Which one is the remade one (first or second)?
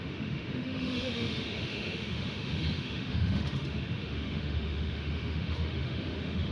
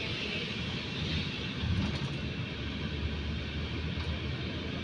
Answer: first